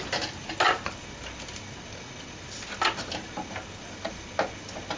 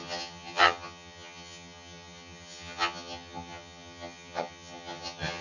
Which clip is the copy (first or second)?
second